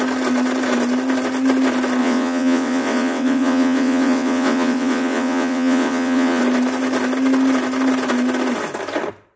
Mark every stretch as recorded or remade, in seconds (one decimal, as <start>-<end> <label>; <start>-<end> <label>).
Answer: 0.0-2.0 recorded; 2.0-6.4 remade; 6.4-9.4 recorded